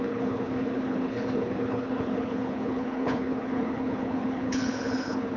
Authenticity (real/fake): fake